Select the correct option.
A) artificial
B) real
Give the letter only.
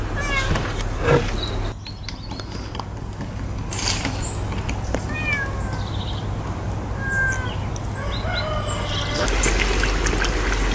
B